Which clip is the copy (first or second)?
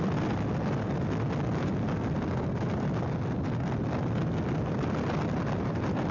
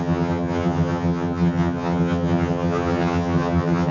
second